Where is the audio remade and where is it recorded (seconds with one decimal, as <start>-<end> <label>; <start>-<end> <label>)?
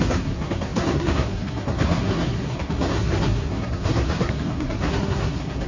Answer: 0.0-5.7 remade